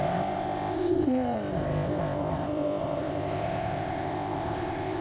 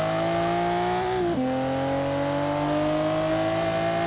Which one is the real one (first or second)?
second